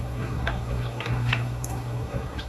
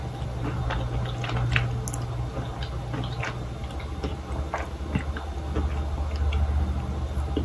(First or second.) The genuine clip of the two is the second